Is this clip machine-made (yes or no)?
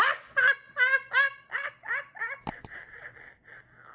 no